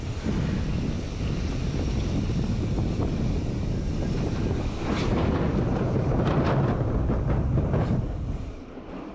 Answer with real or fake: real